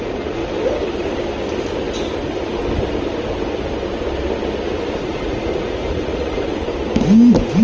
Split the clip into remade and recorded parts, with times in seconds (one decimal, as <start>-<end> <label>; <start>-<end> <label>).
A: 0.0-0.4 remade; 0.4-5.0 recorded; 5.0-6.5 remade; 6.5-7.6 recorded